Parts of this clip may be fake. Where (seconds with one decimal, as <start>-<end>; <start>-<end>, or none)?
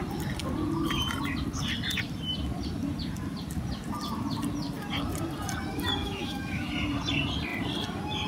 6.0-6.7